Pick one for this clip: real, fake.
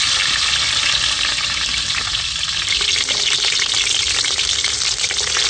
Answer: real